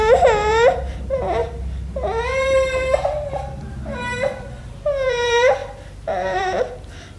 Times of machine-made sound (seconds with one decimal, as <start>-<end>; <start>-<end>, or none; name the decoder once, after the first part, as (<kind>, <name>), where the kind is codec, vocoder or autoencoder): 0.0-7.2 (vocoder, BigVGAN v2)